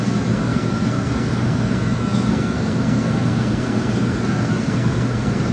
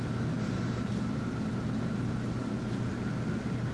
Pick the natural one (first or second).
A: second